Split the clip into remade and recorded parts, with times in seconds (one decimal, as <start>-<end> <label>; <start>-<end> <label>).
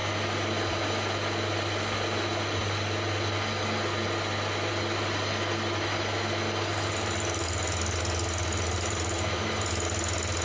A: 0.0-10.4 recorded